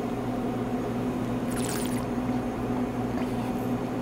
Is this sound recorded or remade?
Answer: recorded